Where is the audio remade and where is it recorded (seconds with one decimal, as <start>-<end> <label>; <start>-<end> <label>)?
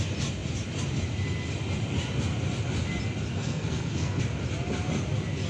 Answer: 0.0-3.3 recorded; 3.3-4.2 remade; 4.2-5.5 recorded